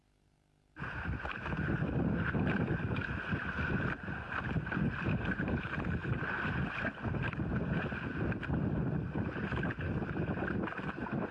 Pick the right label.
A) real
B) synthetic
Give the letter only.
A